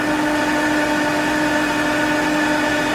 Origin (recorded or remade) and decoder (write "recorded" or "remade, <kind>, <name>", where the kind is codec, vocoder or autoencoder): recorded